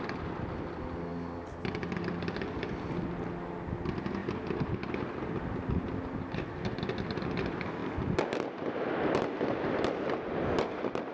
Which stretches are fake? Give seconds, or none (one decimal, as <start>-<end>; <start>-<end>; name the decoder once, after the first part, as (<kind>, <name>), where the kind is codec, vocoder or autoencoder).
none